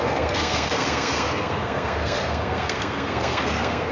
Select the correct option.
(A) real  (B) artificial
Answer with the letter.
B